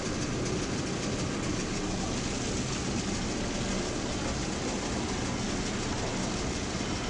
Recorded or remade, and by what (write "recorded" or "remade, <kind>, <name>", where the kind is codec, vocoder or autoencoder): recorded